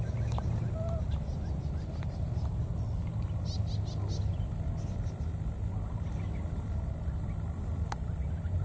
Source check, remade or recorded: recorded